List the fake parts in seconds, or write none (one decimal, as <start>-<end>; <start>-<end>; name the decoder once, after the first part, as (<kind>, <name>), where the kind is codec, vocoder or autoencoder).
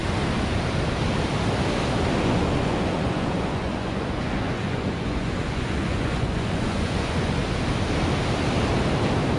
2.2-7.4 (vocoder, Vocos)